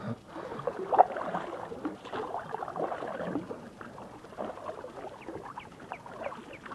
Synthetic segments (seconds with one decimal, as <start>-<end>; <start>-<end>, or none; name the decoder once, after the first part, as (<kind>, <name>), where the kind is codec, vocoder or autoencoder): none